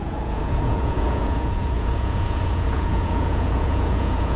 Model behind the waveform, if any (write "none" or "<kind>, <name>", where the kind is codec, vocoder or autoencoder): vocoder, Vocos